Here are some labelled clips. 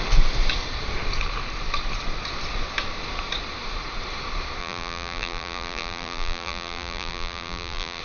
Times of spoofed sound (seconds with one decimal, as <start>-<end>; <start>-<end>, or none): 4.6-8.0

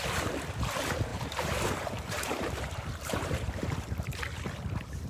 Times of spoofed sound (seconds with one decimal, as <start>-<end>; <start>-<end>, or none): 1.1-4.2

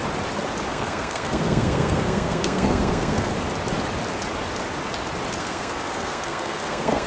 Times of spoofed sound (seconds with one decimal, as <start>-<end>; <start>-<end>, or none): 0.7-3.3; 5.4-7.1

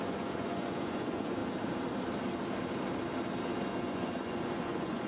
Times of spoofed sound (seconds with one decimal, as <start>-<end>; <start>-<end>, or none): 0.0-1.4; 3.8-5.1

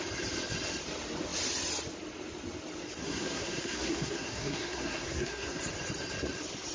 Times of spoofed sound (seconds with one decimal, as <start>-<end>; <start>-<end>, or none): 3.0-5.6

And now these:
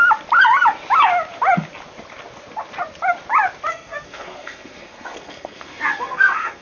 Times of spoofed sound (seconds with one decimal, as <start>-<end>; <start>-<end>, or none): 3.7-6.6